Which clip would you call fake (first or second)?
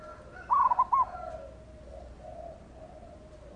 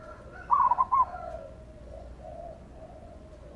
second